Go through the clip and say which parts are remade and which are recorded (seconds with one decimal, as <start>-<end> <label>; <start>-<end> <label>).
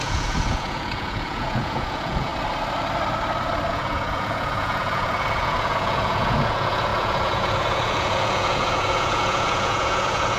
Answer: 0.0-2.3 remade; 2.3-3.7 recorded; 3.7-10.4 remade